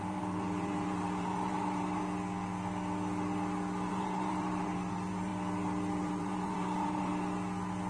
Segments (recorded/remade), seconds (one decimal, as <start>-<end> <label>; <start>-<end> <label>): 0.0-2.0 remade; 2.0-3.9 recorded; 3.9-5.3 remade; 5.3-6.0 recorded; 6.0-7.1 remade; 7.1-7.9 recorded

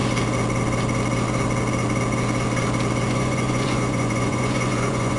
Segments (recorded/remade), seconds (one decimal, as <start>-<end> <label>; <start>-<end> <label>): 0.0-3.1 recorded; 3.1-5.2 remade

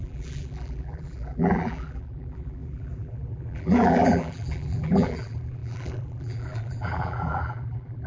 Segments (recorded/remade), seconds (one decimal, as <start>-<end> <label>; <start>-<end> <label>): 0.0-8.1 remade

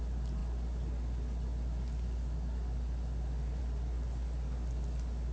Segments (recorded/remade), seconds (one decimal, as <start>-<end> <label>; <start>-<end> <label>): 0.0-5.3 recorded

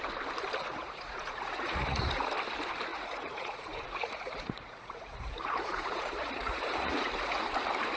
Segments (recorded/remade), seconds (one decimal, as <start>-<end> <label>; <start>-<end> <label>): 0.0-0.7 recorded; 0.7-2.3 remade; 2.3-2.9 recorded; 2.9-7.4 remade; 7.4-8.0 recorded

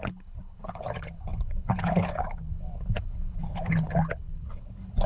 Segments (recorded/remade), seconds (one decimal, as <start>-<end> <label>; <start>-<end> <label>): 0.0-5.1 remade

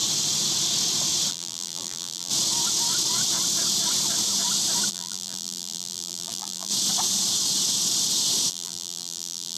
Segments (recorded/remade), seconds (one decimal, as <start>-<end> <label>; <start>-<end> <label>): 0.0-1.3 recorded; 1.3-2.3 remade; 2.3-4.9 recorded; 4.9-6.7 remade; 6.7-8.5 recorded; 8.5-9.6 remade

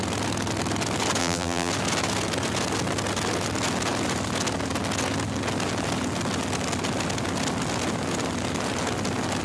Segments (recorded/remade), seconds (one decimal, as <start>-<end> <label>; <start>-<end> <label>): 0.0-1.2 recorded; 1.2-1.7 remade; 1.7-9.4 recorded